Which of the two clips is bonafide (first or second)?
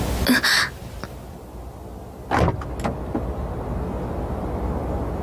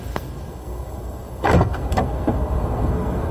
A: first